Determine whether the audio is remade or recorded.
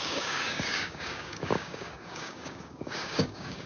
remade